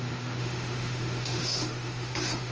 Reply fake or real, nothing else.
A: fake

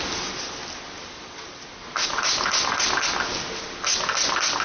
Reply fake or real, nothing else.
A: real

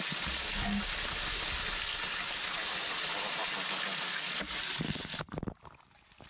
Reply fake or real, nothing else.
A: real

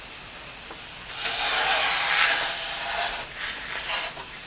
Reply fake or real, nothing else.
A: real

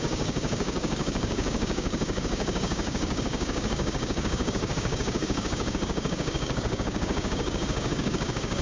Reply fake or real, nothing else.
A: fake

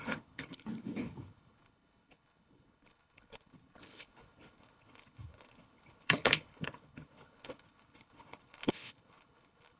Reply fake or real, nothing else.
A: fake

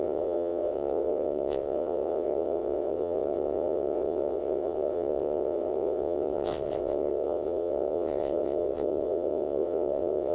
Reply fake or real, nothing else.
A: fake